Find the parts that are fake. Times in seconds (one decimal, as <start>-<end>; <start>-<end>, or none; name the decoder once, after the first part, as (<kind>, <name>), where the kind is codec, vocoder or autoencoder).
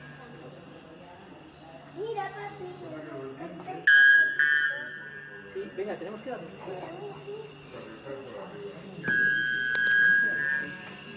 none